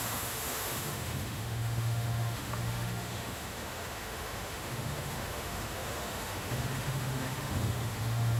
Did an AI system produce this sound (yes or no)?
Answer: yes